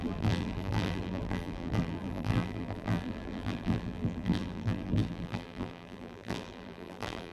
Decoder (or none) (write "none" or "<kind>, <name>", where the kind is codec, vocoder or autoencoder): vocoder, BigVGAN v2